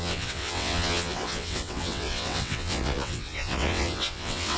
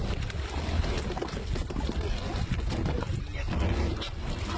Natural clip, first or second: second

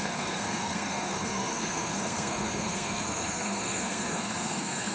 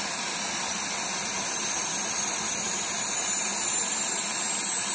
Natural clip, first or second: second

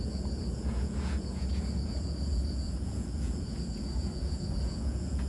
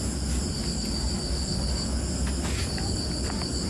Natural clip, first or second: second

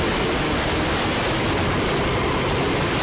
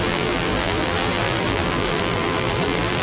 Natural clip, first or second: first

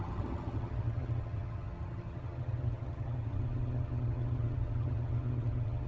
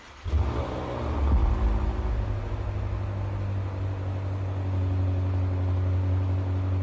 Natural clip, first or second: second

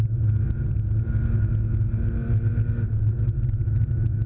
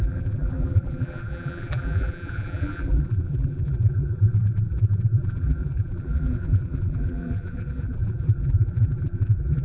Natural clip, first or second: first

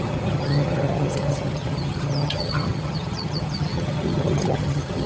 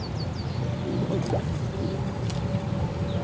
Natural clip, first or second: second